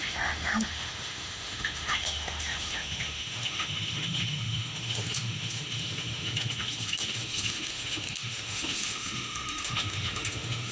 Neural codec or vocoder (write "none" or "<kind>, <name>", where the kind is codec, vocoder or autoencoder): autoencoder, DAC-VAE